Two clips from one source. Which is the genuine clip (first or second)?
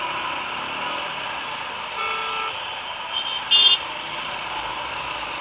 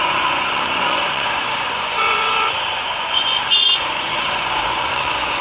first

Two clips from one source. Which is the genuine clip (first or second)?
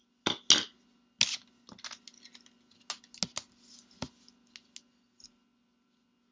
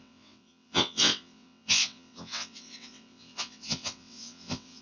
first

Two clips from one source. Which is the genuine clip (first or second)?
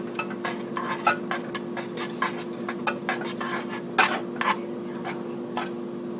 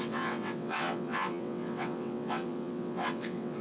first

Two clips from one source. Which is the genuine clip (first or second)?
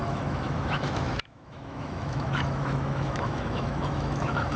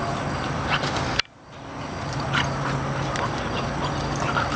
second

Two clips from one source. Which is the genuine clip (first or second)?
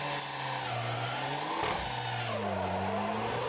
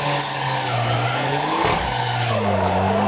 first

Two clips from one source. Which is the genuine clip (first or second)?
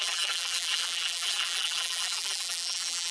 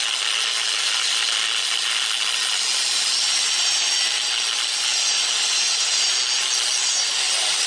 second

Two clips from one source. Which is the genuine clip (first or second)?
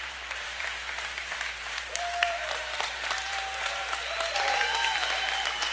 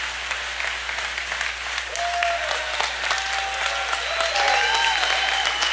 second